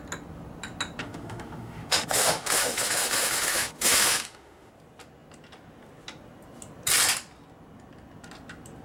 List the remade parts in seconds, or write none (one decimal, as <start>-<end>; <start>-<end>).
1.0-4.7